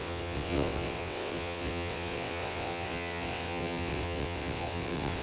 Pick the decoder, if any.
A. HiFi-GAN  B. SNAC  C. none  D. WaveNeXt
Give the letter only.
D